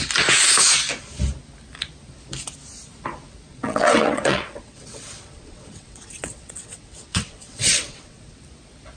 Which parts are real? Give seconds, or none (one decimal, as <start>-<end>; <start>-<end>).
0.0-3.5; 8.4-9.0